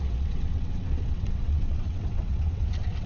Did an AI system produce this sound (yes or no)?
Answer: yes